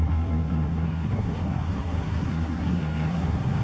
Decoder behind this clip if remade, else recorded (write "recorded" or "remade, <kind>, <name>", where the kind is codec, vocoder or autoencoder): remade, codec, SNAC